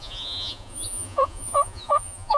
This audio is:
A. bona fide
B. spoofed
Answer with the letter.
B